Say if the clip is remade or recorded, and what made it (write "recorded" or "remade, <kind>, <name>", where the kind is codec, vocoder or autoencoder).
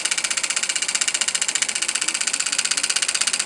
recorded